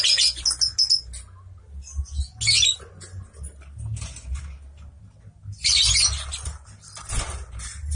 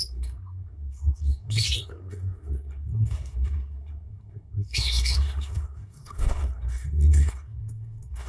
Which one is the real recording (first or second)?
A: first